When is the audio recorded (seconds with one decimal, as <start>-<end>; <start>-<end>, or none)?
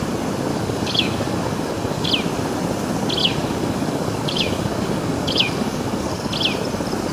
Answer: 0.0-0.5; 2.1-3.2; 6.3-7.1